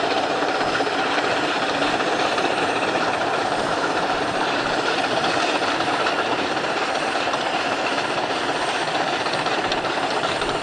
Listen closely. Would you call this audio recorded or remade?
remade